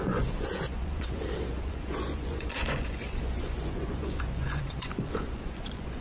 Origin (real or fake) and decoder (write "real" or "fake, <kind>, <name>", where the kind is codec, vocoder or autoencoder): fake, vocoder, Vocos